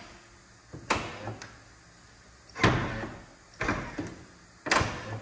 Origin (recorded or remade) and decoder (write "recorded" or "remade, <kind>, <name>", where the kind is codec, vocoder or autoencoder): recorded